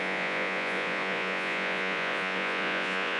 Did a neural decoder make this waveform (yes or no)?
yes